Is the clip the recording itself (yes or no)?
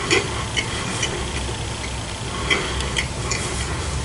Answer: yes